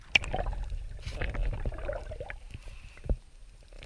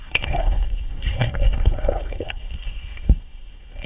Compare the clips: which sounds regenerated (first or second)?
second